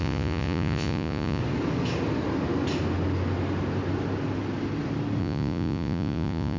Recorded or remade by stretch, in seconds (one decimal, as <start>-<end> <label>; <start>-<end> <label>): 0.0-1.4 remade; 1.4-5.2 recorded; 5.2-6.6 remade